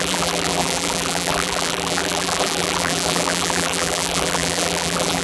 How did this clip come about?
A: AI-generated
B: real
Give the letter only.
A